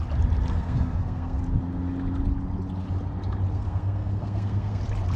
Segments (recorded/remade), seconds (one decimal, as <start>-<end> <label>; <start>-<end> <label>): 0.0-0.5 recorded; 0.5-1.4 remade; 1.4-3.5 recorded; 3.5-4.8 remade; 4.8-5.2 recorded